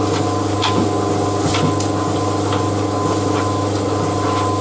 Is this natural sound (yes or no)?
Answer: yes